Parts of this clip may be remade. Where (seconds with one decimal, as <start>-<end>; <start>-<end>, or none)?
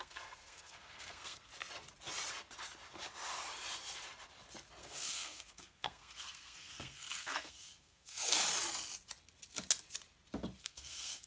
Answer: 0.0-1.5; 4.8-8.4; 10.6-11.3